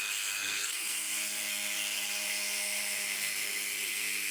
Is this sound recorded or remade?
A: remade